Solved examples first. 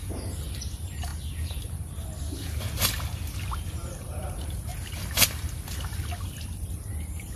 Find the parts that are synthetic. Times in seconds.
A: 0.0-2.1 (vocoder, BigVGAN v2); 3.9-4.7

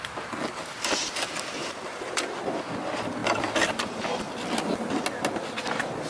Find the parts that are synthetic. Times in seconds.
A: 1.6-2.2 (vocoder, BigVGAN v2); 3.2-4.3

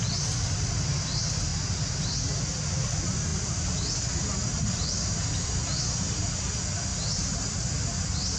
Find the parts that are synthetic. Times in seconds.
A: none

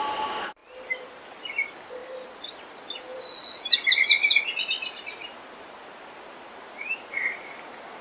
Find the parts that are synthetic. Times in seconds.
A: 0.6-1.4 (vocoder, BigVGAN v2); 2.0-2.5; 3.1-8.0